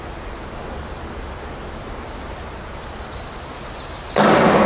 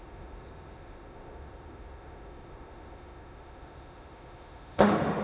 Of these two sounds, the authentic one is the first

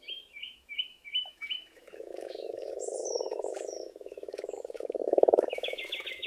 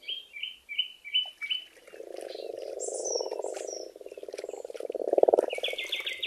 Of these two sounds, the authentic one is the second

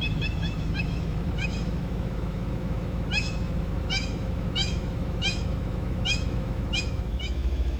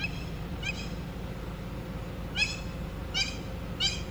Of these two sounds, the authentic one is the second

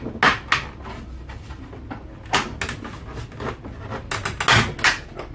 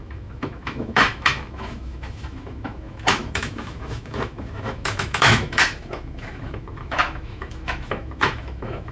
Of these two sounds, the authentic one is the first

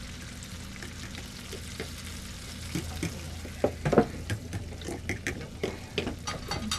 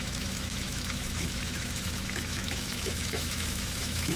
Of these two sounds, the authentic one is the first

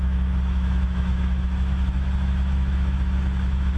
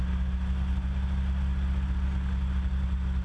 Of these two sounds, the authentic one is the second